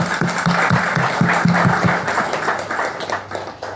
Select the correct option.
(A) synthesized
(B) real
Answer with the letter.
B